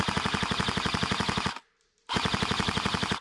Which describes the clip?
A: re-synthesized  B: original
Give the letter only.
B